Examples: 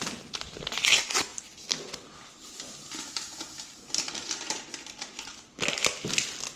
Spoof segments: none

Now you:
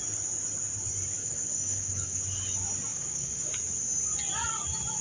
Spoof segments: 1.2-2.2; 2.9-3.5

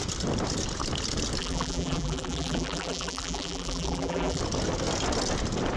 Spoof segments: 1.4-4.4

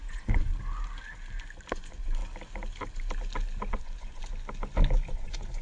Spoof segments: 0.0-0.5; 1.7-2.2; 3.7-4.2; 5.1-5.6

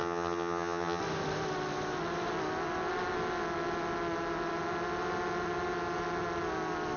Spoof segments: 0.0-1.0

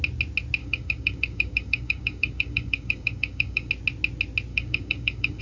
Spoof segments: 0.6-3.7; 4.5-5.4